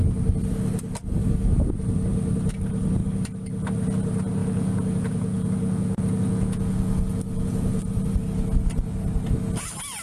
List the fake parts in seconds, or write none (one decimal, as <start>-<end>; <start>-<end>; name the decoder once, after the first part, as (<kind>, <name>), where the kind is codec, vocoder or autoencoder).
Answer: 4.4-7.8 (vocoder, Vocos)